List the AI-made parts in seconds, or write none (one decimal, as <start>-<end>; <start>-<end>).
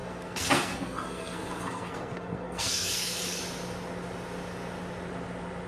0.0-3.4